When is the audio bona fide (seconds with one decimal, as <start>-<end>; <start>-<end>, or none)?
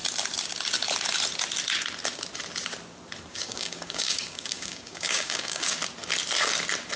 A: 0.0-3.3; 5.8-7.0